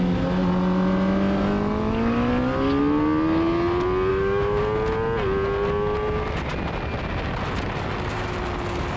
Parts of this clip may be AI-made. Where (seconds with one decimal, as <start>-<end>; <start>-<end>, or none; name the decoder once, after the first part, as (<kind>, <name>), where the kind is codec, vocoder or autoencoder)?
4.1-4.6 (autoencoder, DAC-VAE)